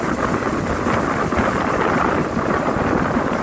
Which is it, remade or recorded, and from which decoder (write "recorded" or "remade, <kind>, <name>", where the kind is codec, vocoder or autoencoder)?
recorded